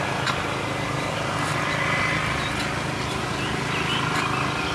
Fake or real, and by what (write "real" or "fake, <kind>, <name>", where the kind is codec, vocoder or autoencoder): real